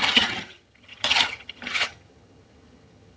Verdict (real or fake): fake